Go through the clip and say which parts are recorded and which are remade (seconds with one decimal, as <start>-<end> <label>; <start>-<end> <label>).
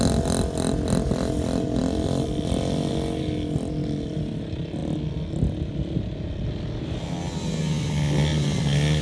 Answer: 0.0-9.0 recorded